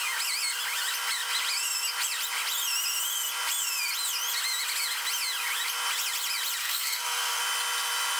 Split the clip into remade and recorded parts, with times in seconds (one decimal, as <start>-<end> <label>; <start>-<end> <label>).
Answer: 0.0-6.6 recorded; 6.6-7.4 remade; 7.4-8.2 recorded